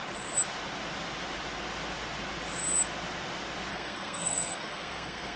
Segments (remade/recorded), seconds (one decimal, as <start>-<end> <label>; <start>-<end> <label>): 0.0-3.7 recorded; 3.7-5.4 remade